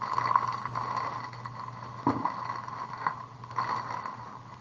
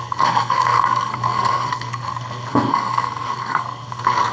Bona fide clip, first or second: first